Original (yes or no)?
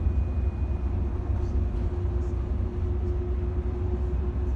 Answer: yes